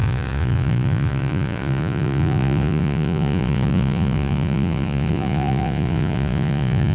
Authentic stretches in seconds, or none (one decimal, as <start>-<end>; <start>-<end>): none